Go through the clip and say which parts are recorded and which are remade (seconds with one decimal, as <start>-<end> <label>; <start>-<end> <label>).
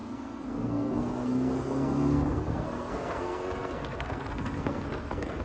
0.0-5.4 remade